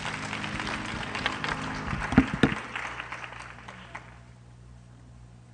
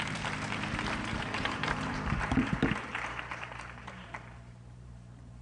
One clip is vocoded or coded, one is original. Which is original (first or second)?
first